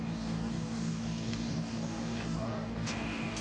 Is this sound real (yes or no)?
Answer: no